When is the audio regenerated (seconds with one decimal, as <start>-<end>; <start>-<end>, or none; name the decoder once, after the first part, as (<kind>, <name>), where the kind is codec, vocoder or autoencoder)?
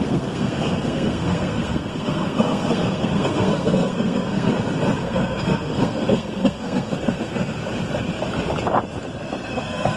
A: 0.0-4.5 (codec, SNAC); 5.0-7.6; 9.5-10.0